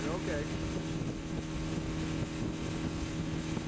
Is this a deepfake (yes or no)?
no